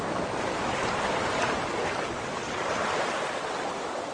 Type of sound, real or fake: real